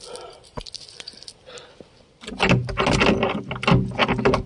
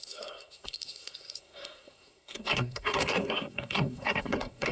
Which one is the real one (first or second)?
first